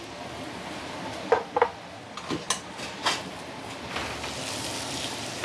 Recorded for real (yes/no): yes